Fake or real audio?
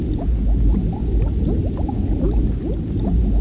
real